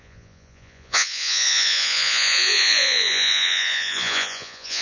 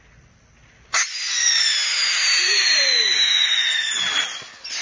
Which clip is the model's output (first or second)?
first